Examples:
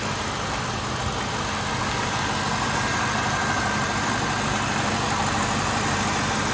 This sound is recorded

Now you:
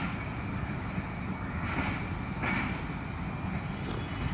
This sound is recorded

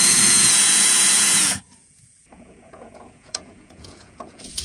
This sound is remade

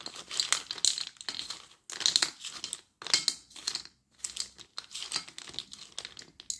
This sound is recorded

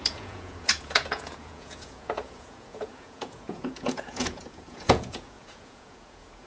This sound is remade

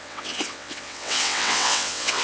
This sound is remade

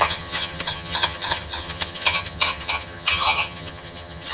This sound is remade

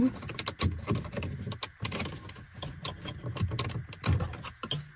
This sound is recorded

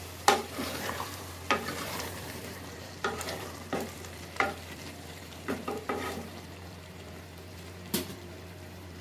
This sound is remade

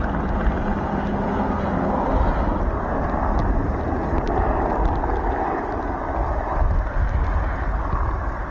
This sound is recorded